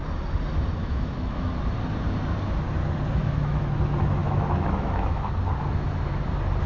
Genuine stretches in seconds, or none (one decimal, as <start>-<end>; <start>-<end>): 0.0-0.8; 1.5-3.2; 3.7-4.2; 5.3-6.7